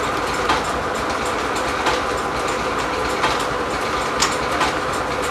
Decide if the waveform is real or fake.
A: real